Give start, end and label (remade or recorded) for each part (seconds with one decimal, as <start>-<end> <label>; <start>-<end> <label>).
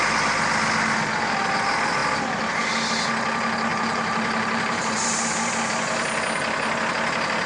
0.0-3.7 recorded; 3.7-5.5 remade; 5.5-7.5 recorded